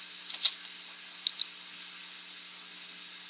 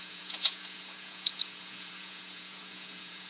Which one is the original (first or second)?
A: first